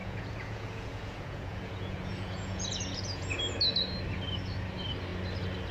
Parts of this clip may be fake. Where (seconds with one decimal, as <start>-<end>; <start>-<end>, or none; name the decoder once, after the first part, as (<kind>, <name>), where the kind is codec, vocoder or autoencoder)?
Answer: 0.0-3.4 (vocoder, Vocos)